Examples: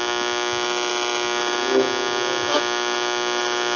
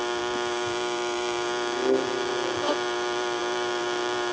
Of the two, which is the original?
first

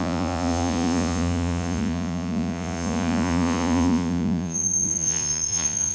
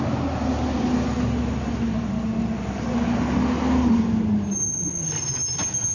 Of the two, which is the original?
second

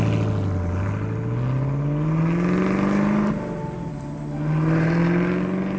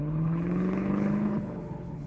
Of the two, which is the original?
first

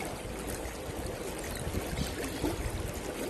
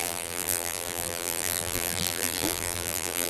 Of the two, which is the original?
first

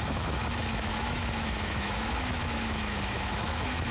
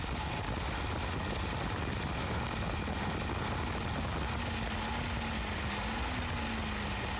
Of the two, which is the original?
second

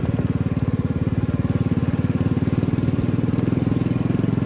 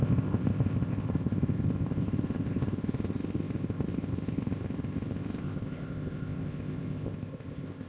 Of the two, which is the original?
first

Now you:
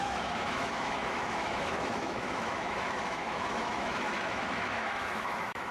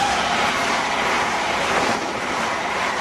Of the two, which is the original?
second